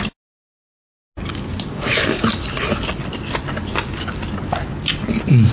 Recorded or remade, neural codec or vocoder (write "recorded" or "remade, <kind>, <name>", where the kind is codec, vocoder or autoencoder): recorded